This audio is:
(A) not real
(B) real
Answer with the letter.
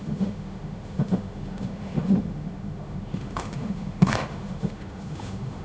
A